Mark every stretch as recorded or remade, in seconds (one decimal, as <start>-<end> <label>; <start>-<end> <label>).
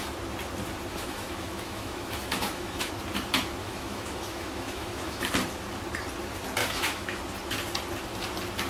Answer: 0.0-0.9 recorded; 0.9-2.9 remade; 2.9-3.6 recorded; 3.6-5.3 remade; 5.3-6.6 recorded; 6.6-7.2 remade; 7.2-8.7 recorded